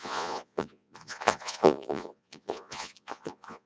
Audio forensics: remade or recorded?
remade